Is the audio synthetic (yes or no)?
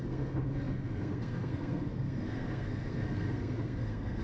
yes